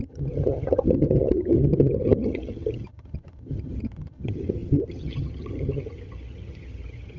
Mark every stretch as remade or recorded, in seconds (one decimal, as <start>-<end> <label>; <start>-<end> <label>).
0.0-7.2 remade